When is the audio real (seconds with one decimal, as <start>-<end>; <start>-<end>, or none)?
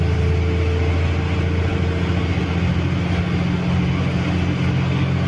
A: 0.0-5.3